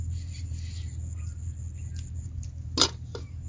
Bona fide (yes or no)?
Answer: yes